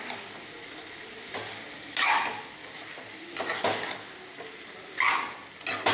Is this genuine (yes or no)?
yes